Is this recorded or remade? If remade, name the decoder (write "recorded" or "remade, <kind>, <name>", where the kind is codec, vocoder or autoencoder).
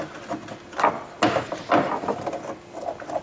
recorded